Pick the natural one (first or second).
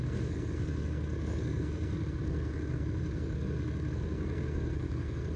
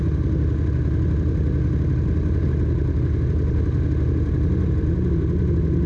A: second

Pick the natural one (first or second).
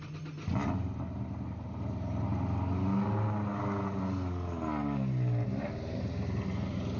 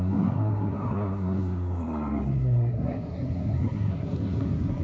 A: first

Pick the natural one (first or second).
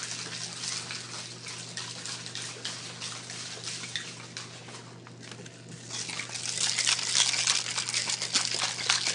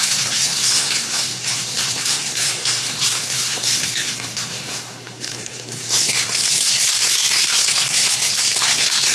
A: first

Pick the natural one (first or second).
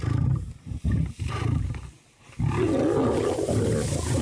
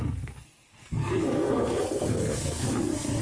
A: first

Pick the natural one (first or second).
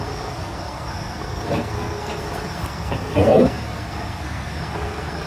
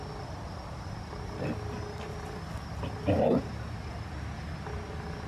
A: second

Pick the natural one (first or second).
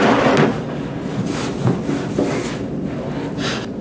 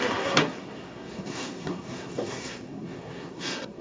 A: first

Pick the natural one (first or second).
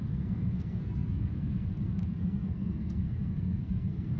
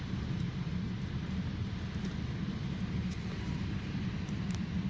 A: second